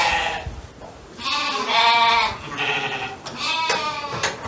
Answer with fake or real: real